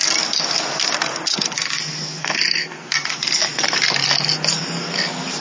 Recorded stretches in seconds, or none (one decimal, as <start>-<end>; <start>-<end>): 0.0-1.3; 1.8-2.2; 3.2-5.4